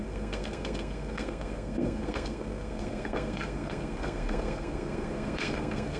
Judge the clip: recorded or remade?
remade